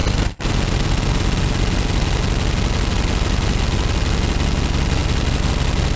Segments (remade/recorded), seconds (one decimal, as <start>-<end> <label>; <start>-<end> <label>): 0.0-6.0 recorded